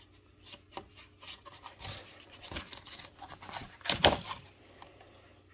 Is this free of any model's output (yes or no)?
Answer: yes